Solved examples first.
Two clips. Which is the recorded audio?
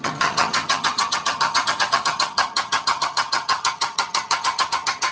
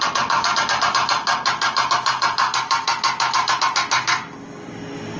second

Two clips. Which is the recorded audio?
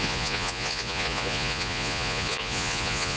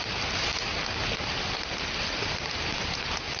second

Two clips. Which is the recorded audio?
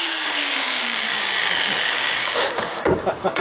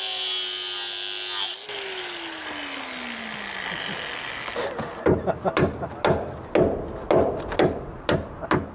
second